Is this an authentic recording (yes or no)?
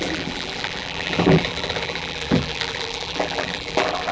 no